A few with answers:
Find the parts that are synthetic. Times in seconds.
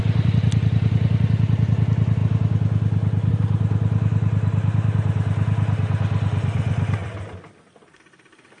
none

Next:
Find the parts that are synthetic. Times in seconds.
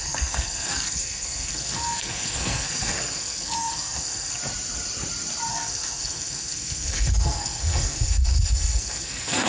0.0-4.4 (codec, SNAC); 5.5-9.5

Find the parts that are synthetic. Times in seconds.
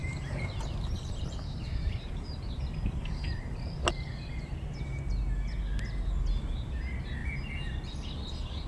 0.0-3.8 (vocoder, BigVGAN v2); 7.2-7.9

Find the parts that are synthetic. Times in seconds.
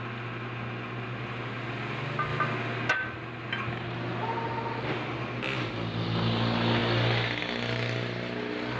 none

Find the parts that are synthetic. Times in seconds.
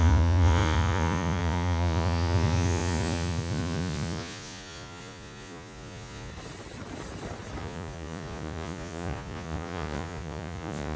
0.0-6.3 (vocoder, Vocos); 7.6-11.0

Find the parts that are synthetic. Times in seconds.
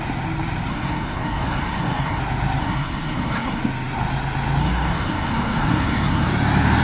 0.7-2.2 (codec, SNAC); 2.6-3.6; 4.6-6.3